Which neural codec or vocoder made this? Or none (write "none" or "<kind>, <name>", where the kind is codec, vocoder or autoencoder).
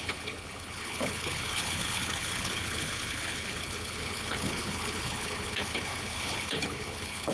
codec, HILCodec